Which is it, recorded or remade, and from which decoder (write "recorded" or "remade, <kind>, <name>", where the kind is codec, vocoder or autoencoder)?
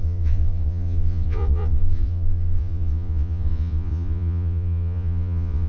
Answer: remade, vocoder, Vocos